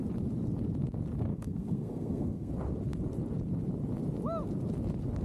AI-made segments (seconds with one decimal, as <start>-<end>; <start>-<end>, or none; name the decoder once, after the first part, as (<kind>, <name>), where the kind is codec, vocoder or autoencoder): 1.3-2.5 (codec, SNAC)